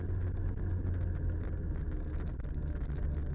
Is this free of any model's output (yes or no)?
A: yes